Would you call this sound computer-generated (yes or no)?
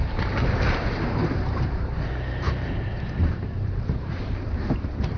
yes